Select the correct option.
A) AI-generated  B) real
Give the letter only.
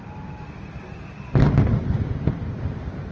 B